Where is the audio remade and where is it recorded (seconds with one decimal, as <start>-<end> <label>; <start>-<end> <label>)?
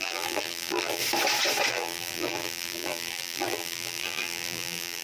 0.0-1.0 remade; 1.0-1.7 recorded; 1.7-5.0 remade